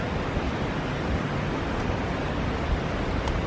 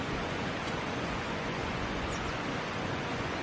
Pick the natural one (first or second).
first